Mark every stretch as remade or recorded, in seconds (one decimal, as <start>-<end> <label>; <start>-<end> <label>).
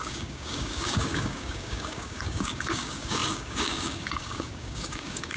0.0-5.4 remade